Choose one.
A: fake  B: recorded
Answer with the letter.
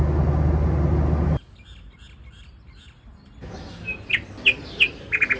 B